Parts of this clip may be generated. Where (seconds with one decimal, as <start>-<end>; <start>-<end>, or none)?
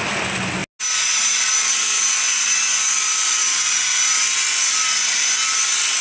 none